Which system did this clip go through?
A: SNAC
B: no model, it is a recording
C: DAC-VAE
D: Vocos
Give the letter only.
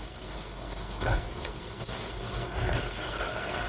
A